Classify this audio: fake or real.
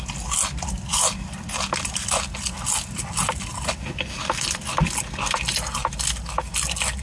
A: real